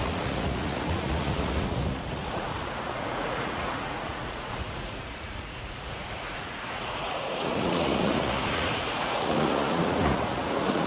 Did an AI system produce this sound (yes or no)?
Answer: yes